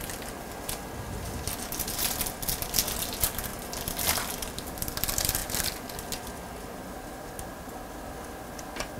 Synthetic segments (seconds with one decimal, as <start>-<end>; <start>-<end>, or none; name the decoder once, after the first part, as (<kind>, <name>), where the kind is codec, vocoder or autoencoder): none